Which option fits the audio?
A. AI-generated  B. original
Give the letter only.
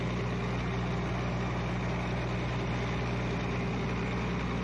B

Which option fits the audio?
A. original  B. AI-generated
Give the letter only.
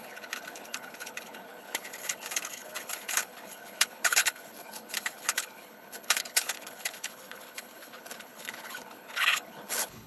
B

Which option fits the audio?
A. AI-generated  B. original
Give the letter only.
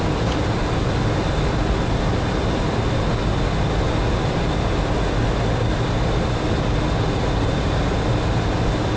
B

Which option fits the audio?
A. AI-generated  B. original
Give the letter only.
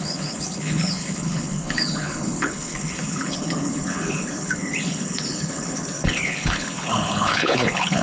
A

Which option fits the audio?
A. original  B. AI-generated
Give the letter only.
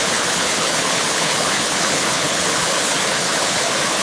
B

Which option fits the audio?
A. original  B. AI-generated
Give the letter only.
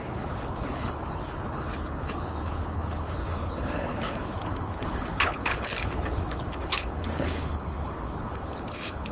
B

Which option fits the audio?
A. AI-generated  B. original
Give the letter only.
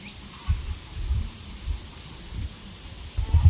B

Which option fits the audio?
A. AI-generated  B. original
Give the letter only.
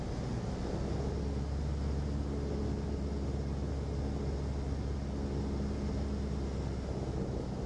B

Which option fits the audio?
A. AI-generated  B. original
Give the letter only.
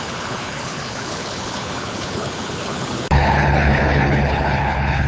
A